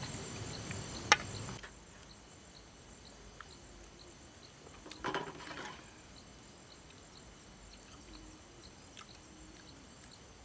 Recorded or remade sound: recorded